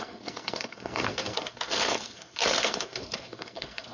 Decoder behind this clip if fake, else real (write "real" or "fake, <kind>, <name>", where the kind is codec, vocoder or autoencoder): fake, codec, SNAC